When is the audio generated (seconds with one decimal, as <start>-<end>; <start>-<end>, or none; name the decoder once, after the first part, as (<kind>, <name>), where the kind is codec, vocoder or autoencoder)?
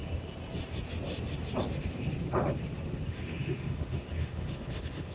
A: 3.1-5.1 (autoencoder, DAC-VAE)